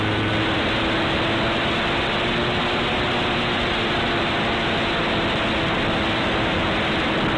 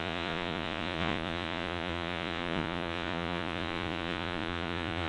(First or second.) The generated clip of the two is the second